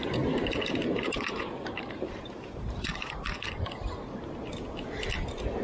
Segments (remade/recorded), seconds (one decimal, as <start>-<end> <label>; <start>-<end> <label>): 0.0-2.9 remade; 2.9-5.6 recorded